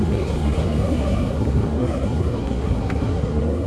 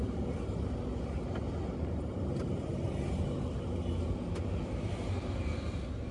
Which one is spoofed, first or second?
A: first